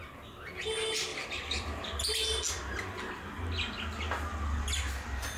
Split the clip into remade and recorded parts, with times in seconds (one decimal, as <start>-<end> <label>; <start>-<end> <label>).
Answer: 0.0-1.1 recorded; 1.1-1.8 remade; 1.8-5.4 recorded